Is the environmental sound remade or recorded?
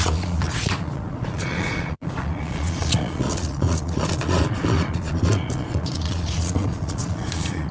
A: remade